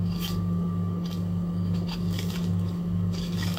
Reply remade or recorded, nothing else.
remade